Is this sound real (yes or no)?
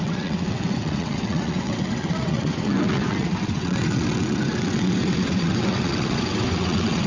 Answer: no